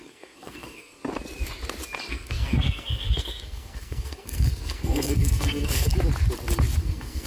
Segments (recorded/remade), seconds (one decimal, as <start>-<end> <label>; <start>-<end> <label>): 0.0-1.0 remade; 1.0-2.1 recorded; 2.1-5.9 remade; 5.9-6.8 recorded; 6.8-7.3 remade